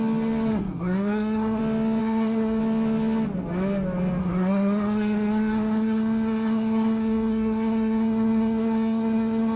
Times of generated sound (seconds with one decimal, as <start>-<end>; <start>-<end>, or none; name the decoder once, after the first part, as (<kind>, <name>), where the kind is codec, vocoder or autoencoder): 0.5-1.6 (codec, SNAC); 2.0-2.6; 4.2-9.6